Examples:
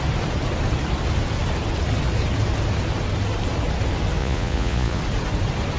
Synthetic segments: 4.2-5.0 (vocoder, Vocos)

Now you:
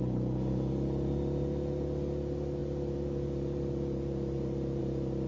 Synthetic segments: none

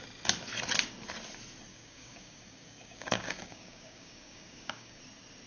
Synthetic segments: 1.7-5.0 (codec, DAC)

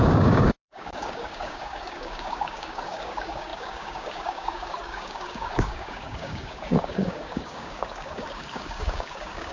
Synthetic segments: 0.0-9.5 (codec, DAC)